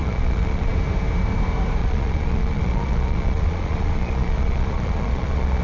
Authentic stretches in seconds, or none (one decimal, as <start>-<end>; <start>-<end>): 0.7-1.8